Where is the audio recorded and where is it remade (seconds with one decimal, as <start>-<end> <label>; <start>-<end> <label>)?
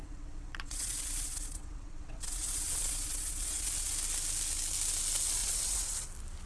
0.0-3.9 remade; 3.9-5.4 recorded; 5.4-6.1 remade; 6.1-6.5 recorded